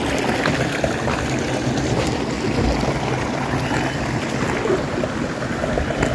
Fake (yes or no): no